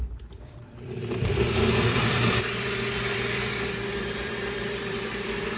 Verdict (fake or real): fake